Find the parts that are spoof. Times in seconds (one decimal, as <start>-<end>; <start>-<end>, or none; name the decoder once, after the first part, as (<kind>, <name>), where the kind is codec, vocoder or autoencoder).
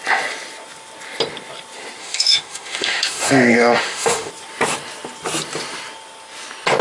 2.0-4.3 (autoencoder, DAC-VAE)